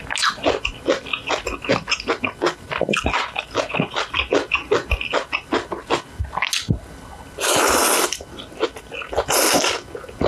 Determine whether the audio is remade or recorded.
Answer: recorded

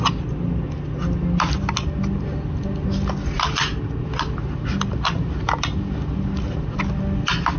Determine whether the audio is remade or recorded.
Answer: recorded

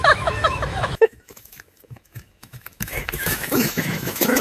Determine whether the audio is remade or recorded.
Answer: remade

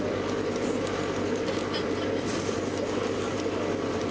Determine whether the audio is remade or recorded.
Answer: recorded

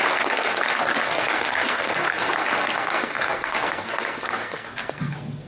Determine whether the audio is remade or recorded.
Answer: remade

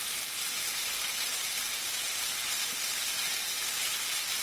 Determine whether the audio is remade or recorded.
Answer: remade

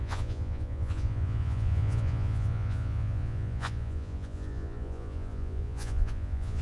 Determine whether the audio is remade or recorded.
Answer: remade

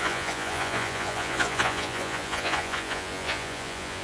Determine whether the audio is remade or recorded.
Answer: remade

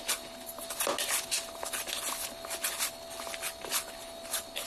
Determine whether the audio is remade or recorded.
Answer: recorded